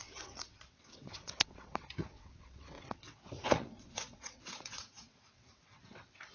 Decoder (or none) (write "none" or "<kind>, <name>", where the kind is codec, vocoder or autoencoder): vocoder, WaveNeXt